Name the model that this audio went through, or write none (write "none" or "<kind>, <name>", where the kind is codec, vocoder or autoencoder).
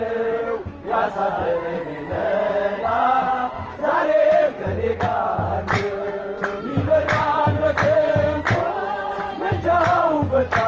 none